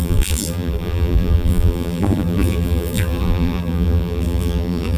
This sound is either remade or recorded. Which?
remade